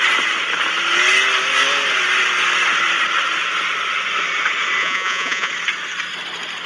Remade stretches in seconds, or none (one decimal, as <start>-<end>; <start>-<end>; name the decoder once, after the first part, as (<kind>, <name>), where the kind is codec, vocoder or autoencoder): 4.8-5.5 (vocoder, Vocos)